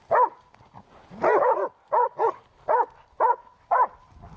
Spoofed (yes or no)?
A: no